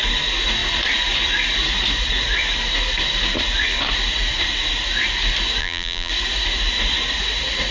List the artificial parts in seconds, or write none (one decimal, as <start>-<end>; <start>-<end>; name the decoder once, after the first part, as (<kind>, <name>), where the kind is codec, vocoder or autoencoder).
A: 5.6-6.1 (vocoder, BigVGAN v2)